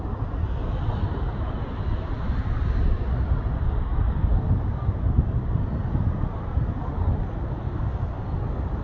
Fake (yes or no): no